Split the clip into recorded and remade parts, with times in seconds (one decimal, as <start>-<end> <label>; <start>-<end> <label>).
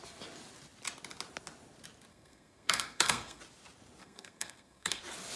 0.0-2.1 recorded; 2.1-3.4 remade; 3.4-4.0 recorded; 4.0-5.0 remade; 5.0-5.4 recorded